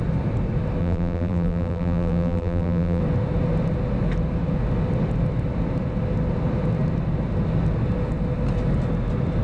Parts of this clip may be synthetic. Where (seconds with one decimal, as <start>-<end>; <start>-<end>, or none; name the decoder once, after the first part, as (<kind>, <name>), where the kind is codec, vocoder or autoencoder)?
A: 0.8-3.0 (vocoder, BigVGAN v2)

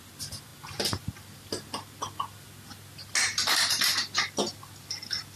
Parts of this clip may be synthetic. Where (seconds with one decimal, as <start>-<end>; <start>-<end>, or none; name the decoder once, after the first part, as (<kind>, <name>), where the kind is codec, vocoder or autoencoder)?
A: none